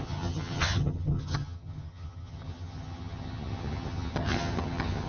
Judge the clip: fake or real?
fake